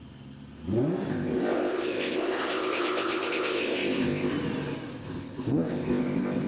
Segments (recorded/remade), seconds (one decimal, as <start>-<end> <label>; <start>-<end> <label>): 0.0-1.1 recorded; 1.1-4.3 remade; 4.3-5.0 recorded; 5.0-6.5 remade